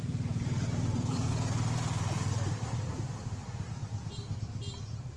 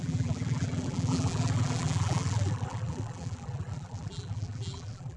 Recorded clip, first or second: first